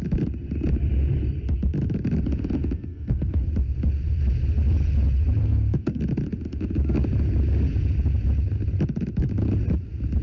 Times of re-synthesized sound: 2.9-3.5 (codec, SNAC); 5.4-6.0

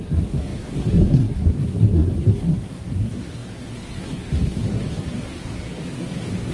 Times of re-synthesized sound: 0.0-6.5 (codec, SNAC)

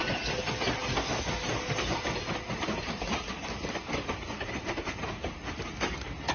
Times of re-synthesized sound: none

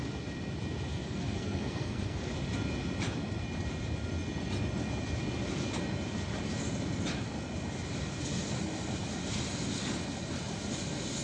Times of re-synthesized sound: 0.9-2.3 (codec, SNAC)